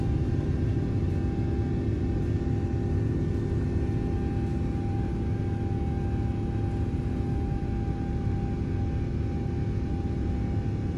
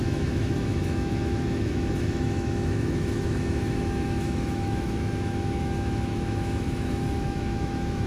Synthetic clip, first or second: second